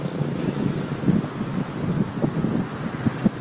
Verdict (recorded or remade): recorded